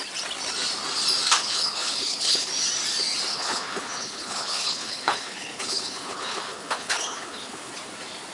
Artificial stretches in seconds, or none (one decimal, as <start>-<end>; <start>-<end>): 1.4-2.5; 3.3-7.7